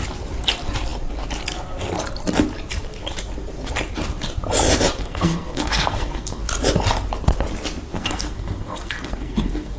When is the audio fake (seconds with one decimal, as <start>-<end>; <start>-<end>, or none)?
5.0-6.4; 7.9-9.8